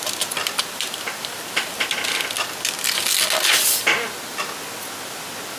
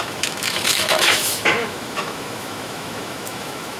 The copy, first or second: second